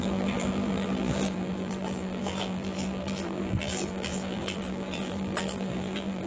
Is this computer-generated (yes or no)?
yes